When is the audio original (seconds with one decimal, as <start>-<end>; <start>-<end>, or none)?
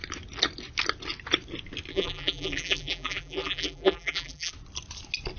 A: 0.0-1.9; 4.5-5.4